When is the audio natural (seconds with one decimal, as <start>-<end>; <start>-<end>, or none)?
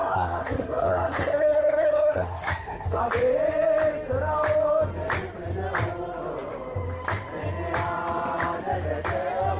3.0-9.6